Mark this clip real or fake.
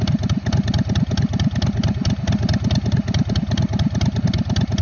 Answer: real